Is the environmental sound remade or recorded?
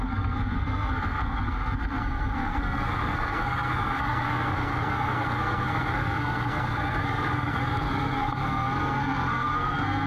remade